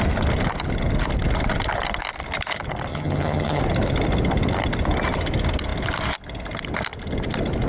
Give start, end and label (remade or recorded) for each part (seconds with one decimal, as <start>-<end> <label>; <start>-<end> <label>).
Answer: 0.0-2.9 recorded; 2.9-3.6 remade; 3.6-7.7 recorded